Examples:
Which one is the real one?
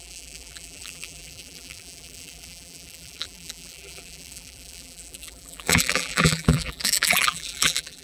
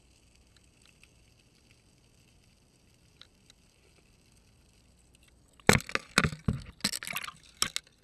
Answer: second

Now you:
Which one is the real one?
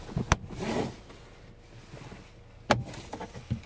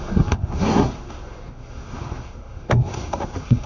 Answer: first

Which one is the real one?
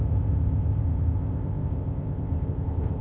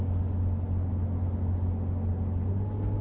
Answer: second